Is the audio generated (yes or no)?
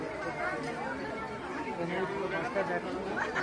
no